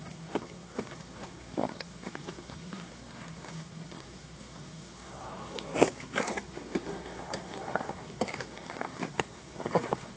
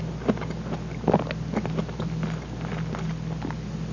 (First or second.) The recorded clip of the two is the second